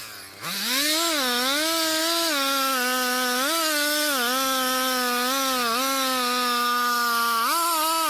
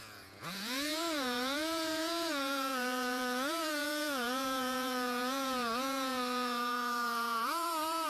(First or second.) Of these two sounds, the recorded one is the first